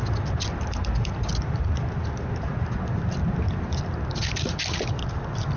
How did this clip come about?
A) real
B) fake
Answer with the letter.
A